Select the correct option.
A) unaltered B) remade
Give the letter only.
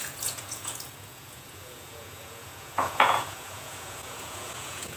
B